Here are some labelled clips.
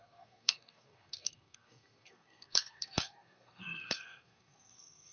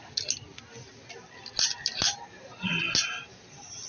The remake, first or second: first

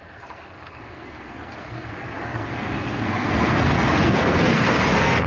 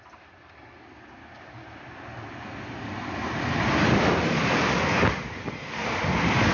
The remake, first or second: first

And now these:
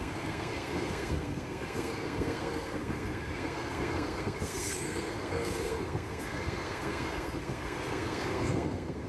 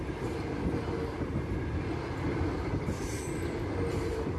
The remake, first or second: first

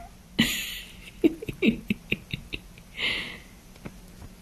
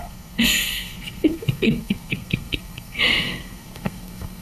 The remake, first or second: second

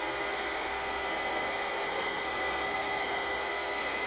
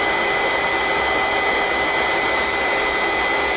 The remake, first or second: first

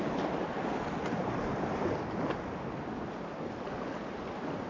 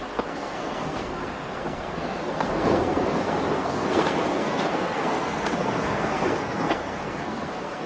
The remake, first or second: second